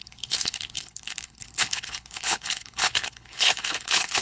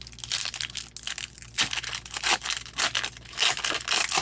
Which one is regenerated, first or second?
first